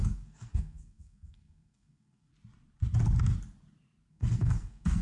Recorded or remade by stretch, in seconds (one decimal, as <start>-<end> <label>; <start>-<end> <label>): 0.0-2.3 remade; 2.3-4.1 recorded; 4.1-5.0 remade